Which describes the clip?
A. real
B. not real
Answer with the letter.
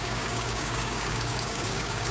B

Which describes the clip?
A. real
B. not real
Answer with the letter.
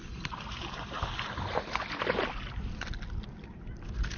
A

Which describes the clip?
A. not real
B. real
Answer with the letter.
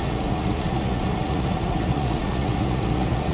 A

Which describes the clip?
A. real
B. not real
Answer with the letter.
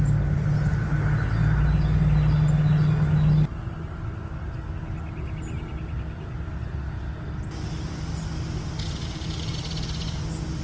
A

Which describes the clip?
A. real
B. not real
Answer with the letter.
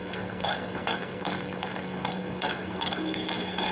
B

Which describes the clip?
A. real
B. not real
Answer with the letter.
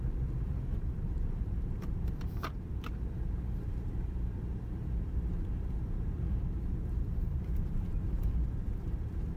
B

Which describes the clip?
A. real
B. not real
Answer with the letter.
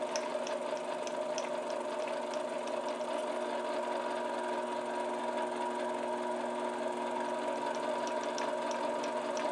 A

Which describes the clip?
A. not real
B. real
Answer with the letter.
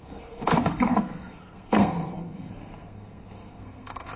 A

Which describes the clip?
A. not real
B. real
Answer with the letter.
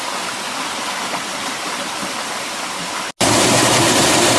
B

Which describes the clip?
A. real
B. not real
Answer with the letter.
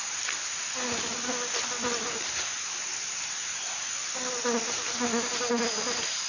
A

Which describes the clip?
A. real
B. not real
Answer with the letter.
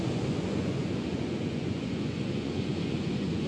B